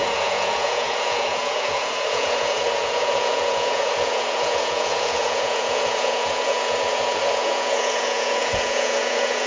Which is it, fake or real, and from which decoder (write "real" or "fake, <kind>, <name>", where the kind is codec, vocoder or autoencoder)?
fake, vocoder, Vocos